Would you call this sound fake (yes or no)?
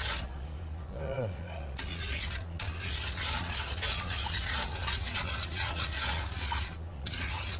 yes